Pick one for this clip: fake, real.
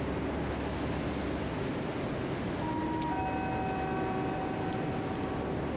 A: real